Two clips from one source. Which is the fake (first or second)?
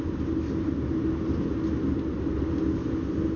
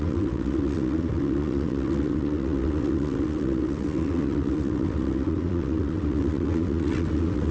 second